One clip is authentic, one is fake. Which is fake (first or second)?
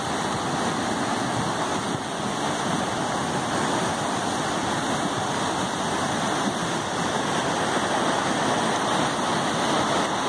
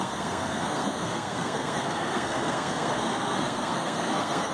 second